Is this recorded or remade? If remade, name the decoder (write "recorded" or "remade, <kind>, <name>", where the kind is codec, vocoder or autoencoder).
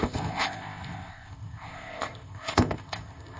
remade, codec, ZipCodec